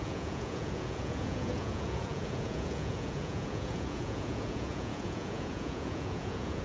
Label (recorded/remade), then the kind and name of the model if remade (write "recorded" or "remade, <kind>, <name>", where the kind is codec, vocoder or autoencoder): remade, vocoder, Vocos